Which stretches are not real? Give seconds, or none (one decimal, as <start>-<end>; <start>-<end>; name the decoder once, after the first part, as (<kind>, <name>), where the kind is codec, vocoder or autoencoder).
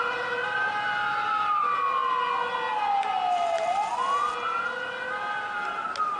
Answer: none